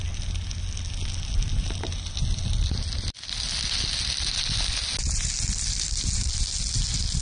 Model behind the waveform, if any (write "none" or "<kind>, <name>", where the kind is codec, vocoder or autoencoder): none